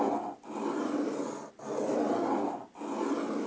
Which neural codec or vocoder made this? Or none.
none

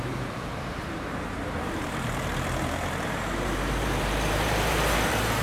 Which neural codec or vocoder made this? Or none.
vocoder, BigVGAN v2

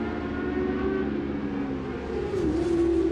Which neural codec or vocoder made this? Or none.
none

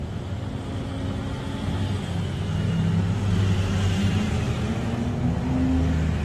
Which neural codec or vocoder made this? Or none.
none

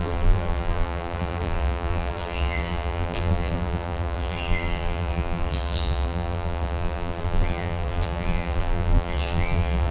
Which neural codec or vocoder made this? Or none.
vocoder, BigVGAN v2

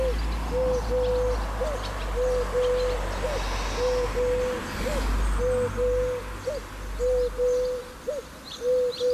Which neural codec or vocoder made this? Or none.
none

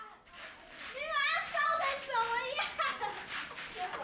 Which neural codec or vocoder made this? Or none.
none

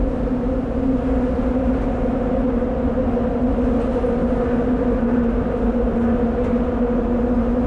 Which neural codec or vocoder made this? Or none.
none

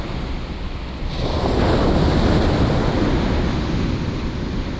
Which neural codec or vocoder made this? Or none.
none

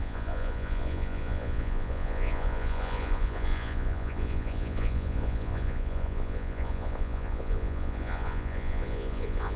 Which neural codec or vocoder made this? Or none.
vocoder, Vocos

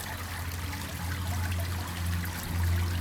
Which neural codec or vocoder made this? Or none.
none